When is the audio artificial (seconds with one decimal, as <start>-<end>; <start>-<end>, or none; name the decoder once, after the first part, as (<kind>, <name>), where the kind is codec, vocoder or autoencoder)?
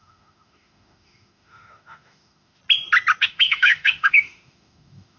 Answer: 0.0-2.6 (autoencoder, DAC-VAE); 3.2-5.2